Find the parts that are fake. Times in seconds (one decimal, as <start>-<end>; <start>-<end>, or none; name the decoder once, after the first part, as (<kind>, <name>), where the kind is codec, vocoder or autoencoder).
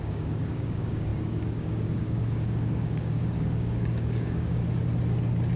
0.0-4.6 (codec, DAC)